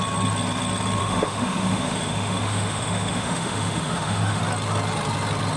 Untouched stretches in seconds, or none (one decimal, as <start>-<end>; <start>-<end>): 0.0-1.0; 4.4-5.6